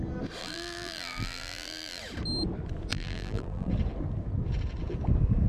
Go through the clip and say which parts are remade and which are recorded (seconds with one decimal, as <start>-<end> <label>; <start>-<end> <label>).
0.0-0.4 recorded; 0.4-2.0 remade; 2.0-2.9 recorded; 2.9-3.7 remade; 3.7-5.5 recorded